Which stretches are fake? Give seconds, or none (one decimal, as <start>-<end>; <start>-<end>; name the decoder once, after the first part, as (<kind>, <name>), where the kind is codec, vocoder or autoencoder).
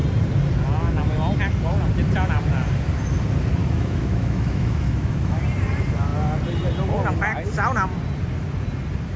3.6-5.4 (autoencoder, DAC-VAE)